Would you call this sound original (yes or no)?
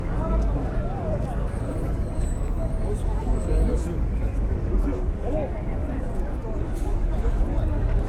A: no